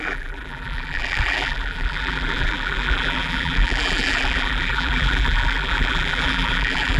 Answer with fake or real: fake